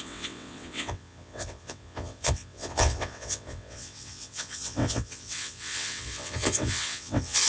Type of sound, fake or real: fake